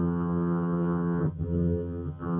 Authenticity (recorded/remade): remade